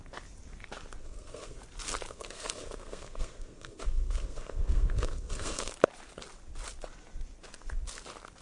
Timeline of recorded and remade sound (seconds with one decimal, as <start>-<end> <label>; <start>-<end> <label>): 0.0-1.0 recorded; 1.0-1.6 remade; 1.6-2.1 recorded; 2.1-5.7 remade; 5.7-8.4 recorded